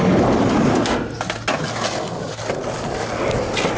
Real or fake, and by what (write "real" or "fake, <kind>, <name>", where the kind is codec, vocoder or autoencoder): real